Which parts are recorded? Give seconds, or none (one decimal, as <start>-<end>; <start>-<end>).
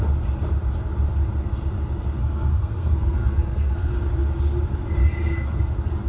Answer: 0.0-2.2; 3.9-6.1